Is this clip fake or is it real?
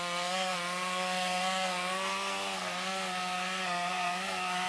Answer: fake